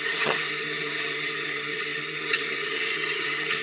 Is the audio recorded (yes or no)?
no